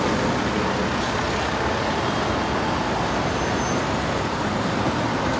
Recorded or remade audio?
recorded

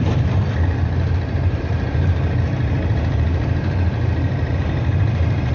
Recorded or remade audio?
remade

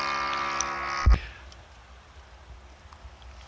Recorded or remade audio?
recorded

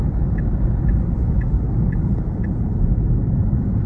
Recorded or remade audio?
recorded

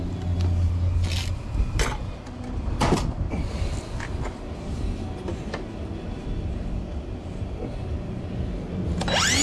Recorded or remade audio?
recorded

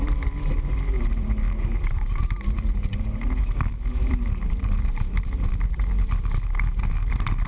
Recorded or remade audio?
remade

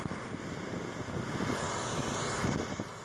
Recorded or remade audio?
recorded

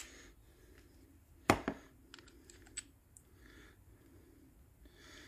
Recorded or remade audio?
recorded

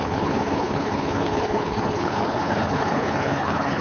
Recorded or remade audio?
remade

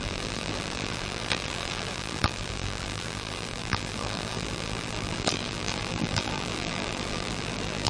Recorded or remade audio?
remade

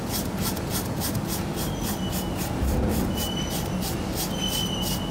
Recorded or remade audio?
recorded